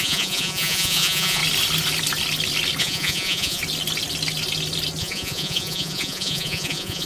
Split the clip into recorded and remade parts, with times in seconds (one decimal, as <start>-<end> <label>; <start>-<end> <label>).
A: 0.0-1.4 remade; 1.4-2.8 recorded; 2.8-3.6 remade; 3.6-5.0 recorded; 5.0-7.1 remade